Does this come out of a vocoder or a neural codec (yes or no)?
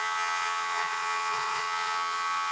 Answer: yes